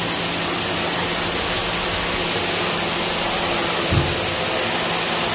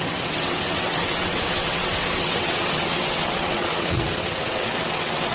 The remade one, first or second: second